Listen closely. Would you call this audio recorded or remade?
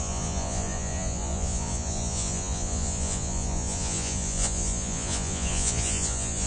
remade